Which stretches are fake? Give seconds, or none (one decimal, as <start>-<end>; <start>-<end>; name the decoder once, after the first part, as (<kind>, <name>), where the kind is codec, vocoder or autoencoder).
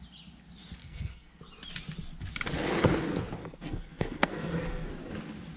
0.8-1.4 (codec, SNAC); 3.4-4.9